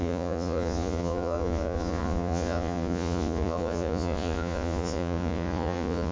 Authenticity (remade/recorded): remade